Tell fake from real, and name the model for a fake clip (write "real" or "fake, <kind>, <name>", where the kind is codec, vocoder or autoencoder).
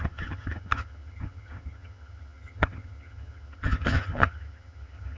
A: fake, vocoder, HiFi-GAN